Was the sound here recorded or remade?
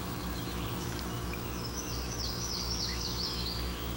remade